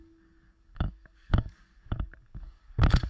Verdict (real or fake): fake